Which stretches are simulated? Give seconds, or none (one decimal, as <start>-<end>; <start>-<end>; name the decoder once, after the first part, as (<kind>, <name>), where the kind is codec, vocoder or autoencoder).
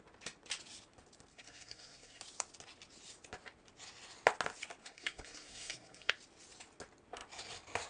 1.3-2.2 (codec, SNAC); 4.8-6.1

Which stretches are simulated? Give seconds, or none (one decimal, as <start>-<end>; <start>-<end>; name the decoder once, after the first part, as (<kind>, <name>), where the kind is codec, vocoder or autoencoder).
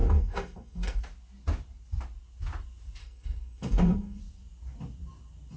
0.0-1.0 (codec, SNAC); 3.0-4.2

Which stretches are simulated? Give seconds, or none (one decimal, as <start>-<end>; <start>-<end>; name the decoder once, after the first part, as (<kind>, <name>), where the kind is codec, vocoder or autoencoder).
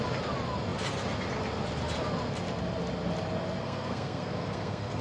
3.6-5.0 (codec, SNAC)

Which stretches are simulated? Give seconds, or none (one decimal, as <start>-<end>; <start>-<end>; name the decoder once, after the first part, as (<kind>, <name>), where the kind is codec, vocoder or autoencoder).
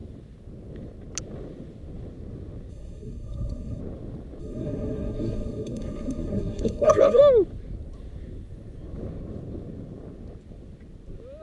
2.7-3.8 (codec, SNAC); 4.4-7.2